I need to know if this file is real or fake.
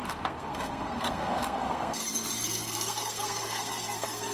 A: fake